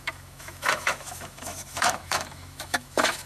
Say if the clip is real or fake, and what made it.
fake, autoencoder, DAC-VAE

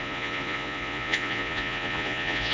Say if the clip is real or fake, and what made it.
fake, vocoder, Vocos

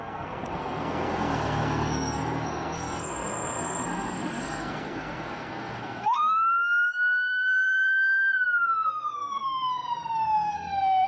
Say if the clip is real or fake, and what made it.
fake, codec, SNAC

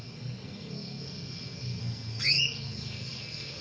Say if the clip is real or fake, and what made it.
fake, codec, SNAC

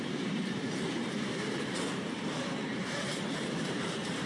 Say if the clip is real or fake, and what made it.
fake, vocoder, BigVGAN v2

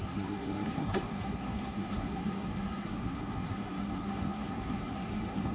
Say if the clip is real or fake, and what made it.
fake, codec, SNAC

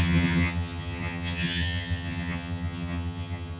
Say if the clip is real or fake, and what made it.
fake, vocoder, HiFi-GAN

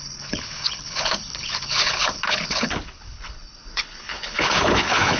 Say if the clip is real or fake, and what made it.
fake, codec, HILCodec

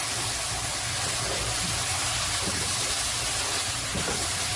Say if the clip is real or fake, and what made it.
real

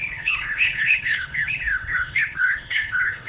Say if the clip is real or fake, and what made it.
fake, codec, HILCodec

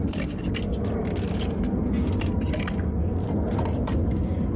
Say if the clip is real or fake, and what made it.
real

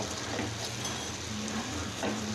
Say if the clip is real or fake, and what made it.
real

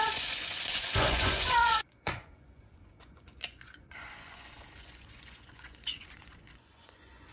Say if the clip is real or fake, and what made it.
fake, vocoder, Vocos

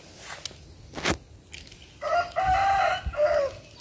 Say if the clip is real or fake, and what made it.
real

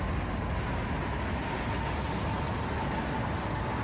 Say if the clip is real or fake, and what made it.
real